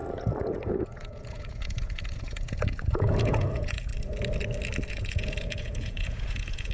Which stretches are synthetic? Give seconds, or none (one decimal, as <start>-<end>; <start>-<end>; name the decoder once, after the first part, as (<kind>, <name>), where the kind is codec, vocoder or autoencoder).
0.0-3.9 (vocoder, Vocos); 4.9-6.7